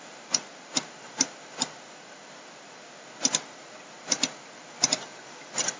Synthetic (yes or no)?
yes